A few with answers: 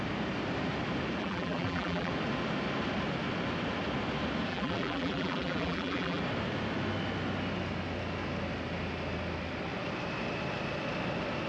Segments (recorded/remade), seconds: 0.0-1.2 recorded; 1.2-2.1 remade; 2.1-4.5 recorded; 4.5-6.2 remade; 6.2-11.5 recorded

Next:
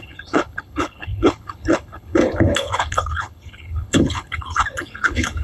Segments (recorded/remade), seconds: 0.0-5.4 remade

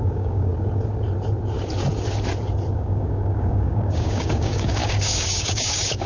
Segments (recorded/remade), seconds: 0.0-0.5 remade; 0.5-2.7 recorded; 2.7-6.1 remade

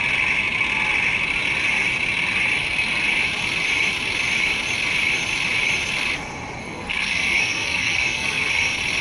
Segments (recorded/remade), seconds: 0.0-6.6 recorded; 6.6-8.5 remade; 8.5-9.0 recorded